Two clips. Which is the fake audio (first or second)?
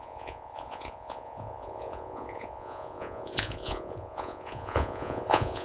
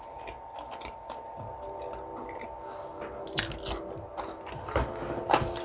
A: first